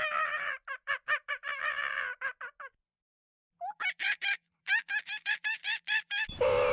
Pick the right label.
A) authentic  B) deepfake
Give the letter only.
B